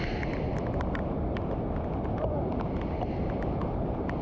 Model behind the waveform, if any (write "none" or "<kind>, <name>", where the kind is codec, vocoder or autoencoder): none